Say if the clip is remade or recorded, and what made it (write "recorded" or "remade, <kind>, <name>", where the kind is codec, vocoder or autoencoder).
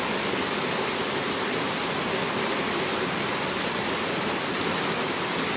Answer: recorded